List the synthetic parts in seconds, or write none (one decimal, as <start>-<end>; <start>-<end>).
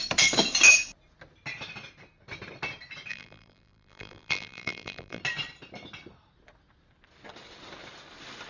3.1-5.2